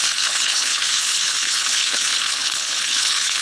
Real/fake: fake